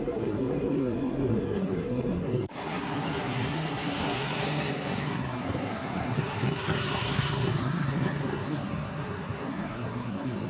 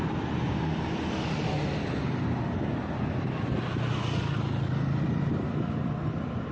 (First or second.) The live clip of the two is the second